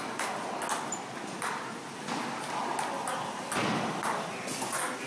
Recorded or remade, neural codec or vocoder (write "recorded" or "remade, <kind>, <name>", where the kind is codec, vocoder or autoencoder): recorded